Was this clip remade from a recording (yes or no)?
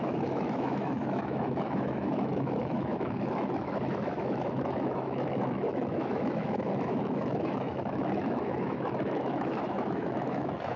yes